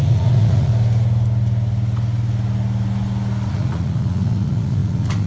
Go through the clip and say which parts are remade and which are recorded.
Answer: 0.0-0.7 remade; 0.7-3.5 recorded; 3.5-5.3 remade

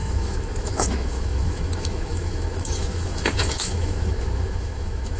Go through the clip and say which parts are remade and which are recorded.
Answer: 0.0-5.2 remade

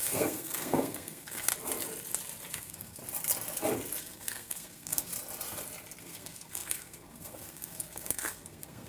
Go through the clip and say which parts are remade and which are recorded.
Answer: 0.0-1.5 remade; 1.5-2.5 recorded; 2.5-3.0 remade; 3.0-4.0 recorded; 4.0-5.1 remade; 5.1-6.0 recorded; 6.0-8.9 remade

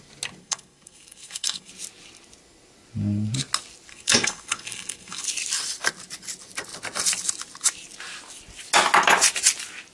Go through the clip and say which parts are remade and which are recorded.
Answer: 0.0-0.4 recorded; 0.4-1.7 remade; 1.7-3.9 recorded; 3.9-5.2 remade; 5.2-9.9 recorded

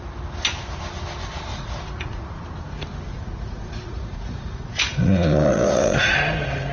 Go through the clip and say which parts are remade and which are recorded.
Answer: 0.0-1.5 recorded; 1.5-2.4 remade; 2.4-3.1 recorded; 3.1-6.1 remade; 6.1-6.7 recorded

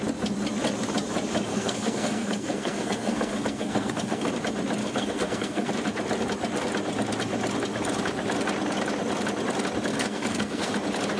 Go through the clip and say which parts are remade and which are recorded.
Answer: 0.0-1.5 recorded; 1.5-4.3 remade; 4.3-4.8 recorded; 4.8-5.7 remade; 5.7-9.9 recorded; 9.9-10.7 remade; 10.7-11.2 recorded

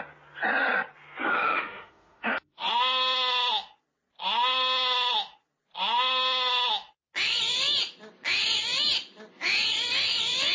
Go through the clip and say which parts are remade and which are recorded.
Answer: 0.0-1.3 recorded; 1.3-2.7 remade; 2.7-10.5 recorded